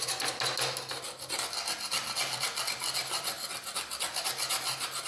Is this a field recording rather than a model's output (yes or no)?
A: yes